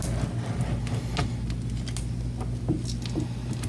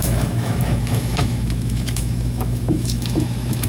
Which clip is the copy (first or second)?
second